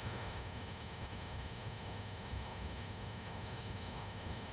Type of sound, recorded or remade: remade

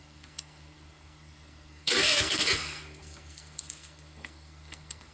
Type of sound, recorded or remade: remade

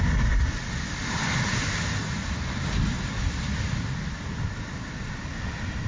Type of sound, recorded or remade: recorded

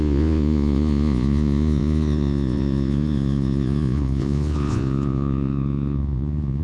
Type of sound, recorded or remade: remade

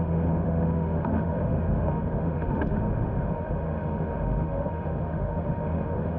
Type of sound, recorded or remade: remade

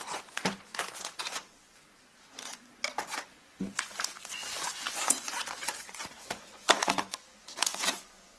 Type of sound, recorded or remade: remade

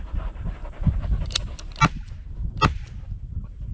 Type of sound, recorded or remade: recorded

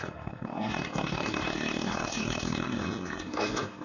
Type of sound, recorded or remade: remade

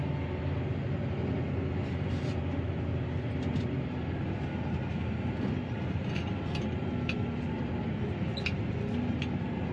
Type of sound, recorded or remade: recorded